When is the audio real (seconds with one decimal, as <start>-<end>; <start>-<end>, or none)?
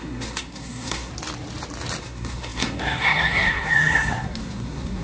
1.1-2.0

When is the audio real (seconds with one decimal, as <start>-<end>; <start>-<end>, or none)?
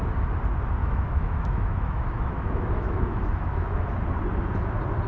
0.0-0.8; 3.9-5.1